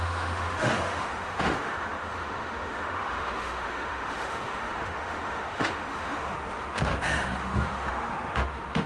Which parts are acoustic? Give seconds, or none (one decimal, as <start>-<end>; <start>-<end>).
none